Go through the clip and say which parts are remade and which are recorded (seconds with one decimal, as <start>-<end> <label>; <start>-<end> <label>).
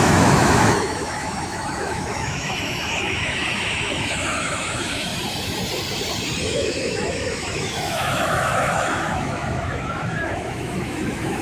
0.0-5.1 remade; 5.1-6.4 recorded; 6.4-11.4 remade